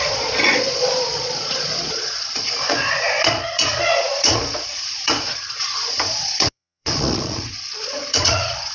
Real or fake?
fake